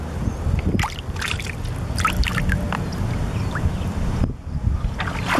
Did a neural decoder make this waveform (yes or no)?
no